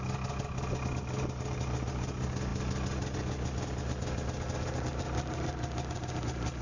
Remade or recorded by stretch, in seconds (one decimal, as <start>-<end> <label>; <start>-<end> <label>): 0.0-6.6 recorded